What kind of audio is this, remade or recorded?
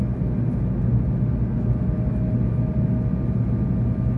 recorded